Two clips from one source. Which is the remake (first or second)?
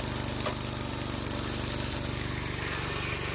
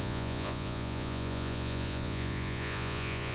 second